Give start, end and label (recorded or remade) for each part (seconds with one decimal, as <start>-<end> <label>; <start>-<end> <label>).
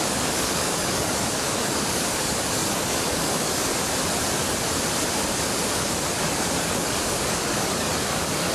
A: 0.0-3.7 remade; 3.7-5.7 recorded; 5.7-8.5 remade